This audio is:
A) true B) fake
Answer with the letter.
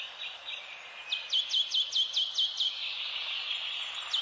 A